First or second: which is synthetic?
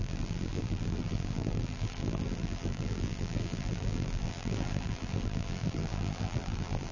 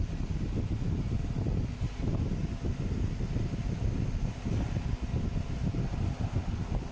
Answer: first